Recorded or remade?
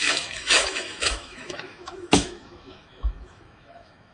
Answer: remade